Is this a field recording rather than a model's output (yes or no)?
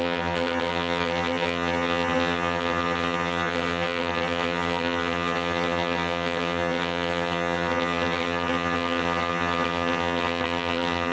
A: no